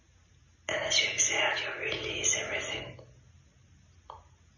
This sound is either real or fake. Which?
real